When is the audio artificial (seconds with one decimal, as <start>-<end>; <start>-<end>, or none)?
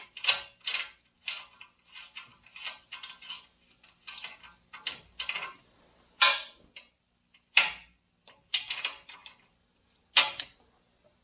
none